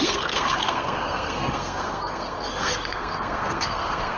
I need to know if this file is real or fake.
fake